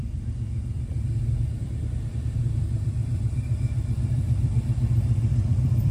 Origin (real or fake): fake